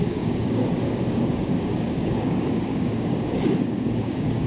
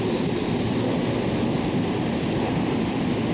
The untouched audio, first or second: second